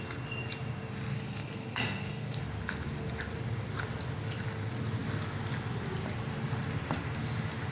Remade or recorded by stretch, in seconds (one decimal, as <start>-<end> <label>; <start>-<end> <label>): 0.0-1.1 recorded; 1.1-2.4 remade; 2.4-7.7 recorded